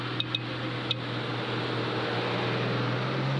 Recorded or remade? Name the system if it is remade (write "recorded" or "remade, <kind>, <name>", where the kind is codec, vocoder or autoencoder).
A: recorded